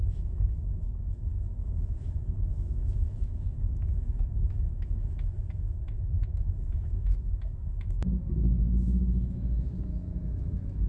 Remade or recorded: remade